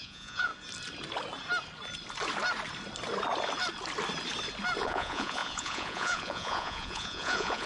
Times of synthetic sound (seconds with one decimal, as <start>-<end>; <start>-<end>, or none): 0.0-0.5; 4.8-7.7